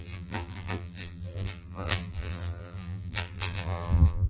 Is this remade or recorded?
remade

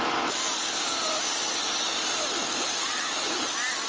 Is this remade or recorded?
recorded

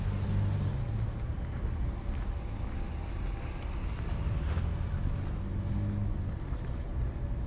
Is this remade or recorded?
recorded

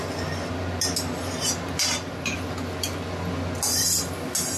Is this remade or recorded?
recorded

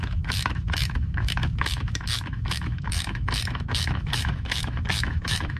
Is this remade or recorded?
remade